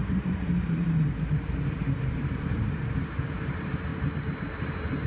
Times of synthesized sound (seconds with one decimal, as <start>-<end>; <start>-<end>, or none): 0.0-3.9; 4.5-5.1